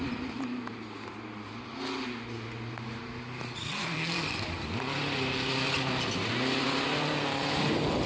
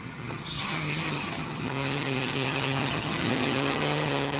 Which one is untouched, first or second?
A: first